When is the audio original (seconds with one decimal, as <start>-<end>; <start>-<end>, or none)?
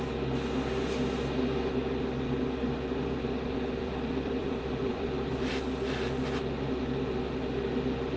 0.0-3.8; 5.5-8.2